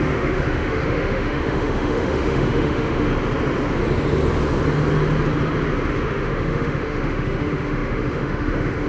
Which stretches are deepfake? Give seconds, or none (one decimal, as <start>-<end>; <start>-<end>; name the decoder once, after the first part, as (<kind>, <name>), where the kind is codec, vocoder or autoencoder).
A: 0.0-3.1 (autoencoder, DAC-VAE); 5.9-8.9